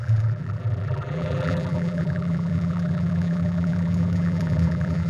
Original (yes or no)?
no